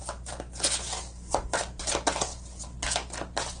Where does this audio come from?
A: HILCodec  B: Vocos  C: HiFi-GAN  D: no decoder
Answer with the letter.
D